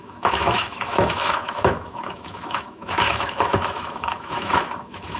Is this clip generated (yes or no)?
yes